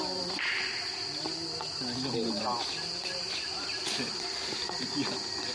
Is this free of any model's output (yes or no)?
yes